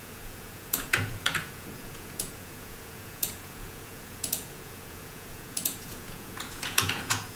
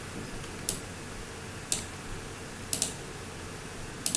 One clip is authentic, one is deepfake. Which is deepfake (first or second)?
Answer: first